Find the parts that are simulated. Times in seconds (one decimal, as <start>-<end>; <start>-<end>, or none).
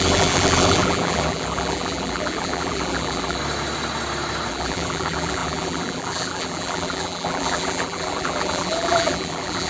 0.0-3.4; 4.5-9.7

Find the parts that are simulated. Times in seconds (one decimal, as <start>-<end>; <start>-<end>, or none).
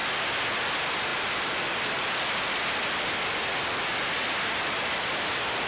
none